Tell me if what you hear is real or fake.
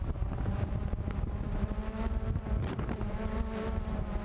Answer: fake